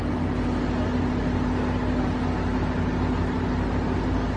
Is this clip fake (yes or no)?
no